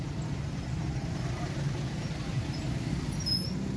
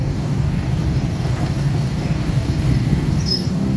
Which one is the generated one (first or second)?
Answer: second